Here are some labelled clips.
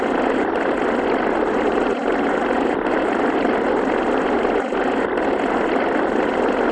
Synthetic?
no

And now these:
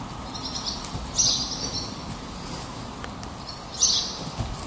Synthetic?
no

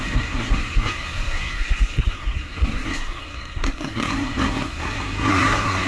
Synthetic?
yes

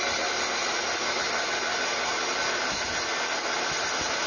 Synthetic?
no